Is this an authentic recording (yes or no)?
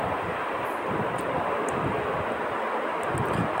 yes